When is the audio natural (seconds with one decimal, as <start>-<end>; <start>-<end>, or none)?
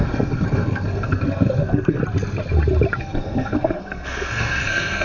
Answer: 2.0-3.0